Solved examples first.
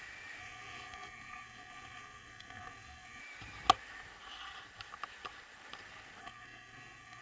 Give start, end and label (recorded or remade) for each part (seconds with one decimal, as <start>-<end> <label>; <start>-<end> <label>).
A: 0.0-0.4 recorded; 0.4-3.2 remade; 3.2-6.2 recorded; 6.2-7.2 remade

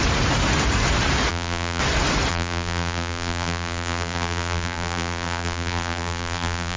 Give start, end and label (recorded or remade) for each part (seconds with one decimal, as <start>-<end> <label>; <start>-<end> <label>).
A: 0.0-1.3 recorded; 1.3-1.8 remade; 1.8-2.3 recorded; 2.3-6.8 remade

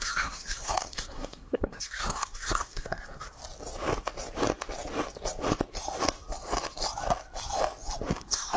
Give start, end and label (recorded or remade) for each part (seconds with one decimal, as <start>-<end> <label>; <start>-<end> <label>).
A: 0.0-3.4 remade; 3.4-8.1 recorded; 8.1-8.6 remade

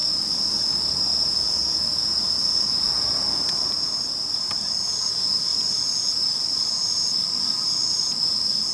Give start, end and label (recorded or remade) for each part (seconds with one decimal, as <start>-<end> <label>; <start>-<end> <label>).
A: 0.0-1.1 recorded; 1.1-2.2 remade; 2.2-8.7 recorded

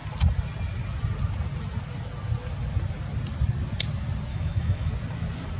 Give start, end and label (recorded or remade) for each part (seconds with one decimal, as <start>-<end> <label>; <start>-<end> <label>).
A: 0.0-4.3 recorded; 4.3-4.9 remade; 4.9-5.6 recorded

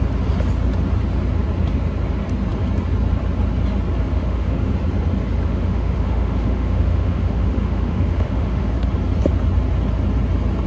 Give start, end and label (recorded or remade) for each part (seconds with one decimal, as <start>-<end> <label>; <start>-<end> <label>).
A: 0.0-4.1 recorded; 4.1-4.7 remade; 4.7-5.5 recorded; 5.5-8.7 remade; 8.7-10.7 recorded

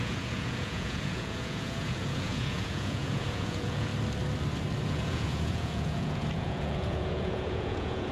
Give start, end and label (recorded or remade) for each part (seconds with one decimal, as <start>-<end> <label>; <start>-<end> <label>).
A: 0.0-3.9 remade; 3.9-4.9 recorded; 4.9-8.1 remade